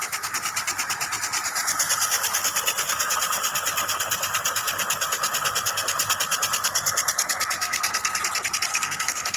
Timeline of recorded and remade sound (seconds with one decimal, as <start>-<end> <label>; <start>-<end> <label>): 0.0-7.6 recorded; 7.6-8.2 remade; 8.2-8.7 recorded; 8.7-9.4 remade